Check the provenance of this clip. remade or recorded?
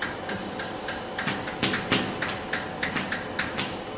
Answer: recorded